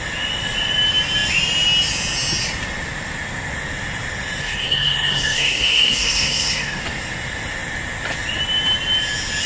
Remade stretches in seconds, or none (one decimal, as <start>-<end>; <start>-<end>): 4.4-6.8